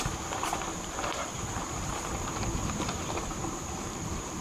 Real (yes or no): no